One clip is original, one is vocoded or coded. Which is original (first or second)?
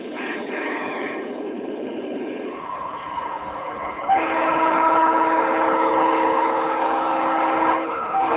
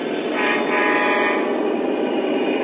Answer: second